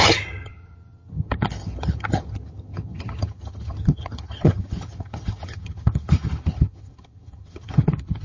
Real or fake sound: fake